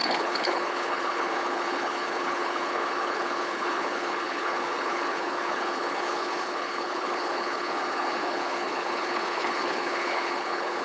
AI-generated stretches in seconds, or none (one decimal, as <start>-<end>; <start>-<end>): 0.0-10.8